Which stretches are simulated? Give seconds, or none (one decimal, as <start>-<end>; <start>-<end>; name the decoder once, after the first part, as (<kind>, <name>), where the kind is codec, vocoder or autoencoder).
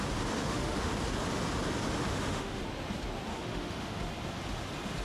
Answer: 0.4-0.9 (autoencoder, DAC-VAE); 2.1-2.6; 3.3-4.0